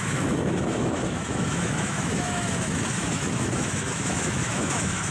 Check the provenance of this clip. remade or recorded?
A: remade